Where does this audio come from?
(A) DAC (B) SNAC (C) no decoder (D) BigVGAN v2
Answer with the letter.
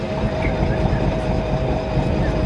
C